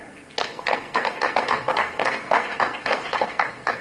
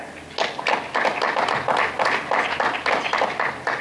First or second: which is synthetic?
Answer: first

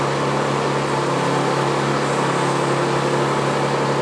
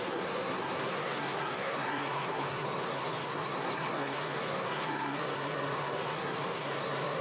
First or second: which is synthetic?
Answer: second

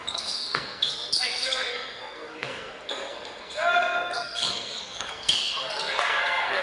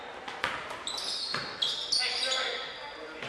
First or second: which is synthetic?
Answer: first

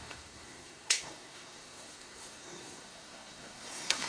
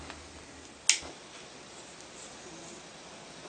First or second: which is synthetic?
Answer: first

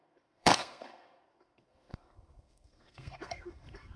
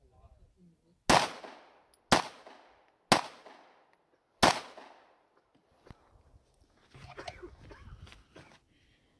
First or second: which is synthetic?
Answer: first